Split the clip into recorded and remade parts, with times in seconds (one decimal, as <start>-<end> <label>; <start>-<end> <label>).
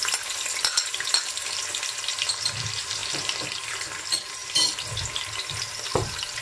0.0-3.0 remade; 3.0-3.6 recorded; 3.6-4.4 remade; 4.4-5.5 recorded; 5.5-6.4 remade